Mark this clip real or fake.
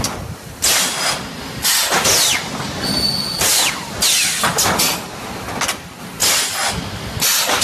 real